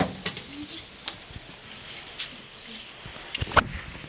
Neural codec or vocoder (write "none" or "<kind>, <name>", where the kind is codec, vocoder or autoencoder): none